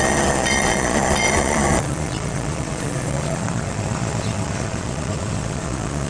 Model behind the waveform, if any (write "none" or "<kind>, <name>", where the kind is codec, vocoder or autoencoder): vocoder, Vocos